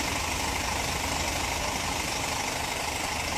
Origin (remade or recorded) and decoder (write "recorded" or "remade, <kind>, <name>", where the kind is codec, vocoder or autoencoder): recorded